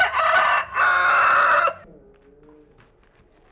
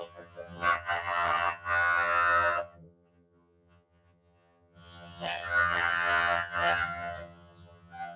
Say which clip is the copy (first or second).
second